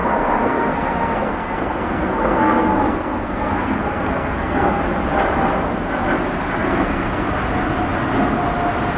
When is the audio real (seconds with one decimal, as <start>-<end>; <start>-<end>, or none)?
4.8-6.6; 7.3-9.0